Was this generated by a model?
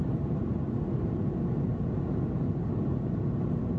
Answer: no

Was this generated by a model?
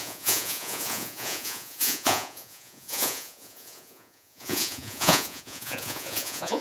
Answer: yes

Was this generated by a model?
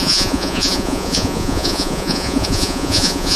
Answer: yes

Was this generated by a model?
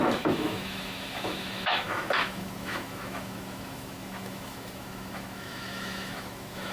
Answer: yes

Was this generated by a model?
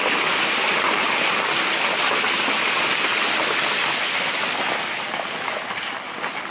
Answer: no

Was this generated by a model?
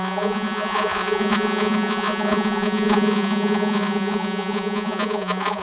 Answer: yes